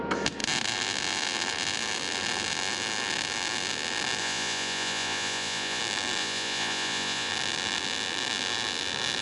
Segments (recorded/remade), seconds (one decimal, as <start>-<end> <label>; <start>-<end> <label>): 0.0-4.2 recorded; 4.2-5.8 remade; 5.8-6.2 recorded; 6.2-7.3 remade; 7.3-9.2 recorded